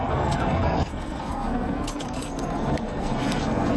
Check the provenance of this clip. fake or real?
fake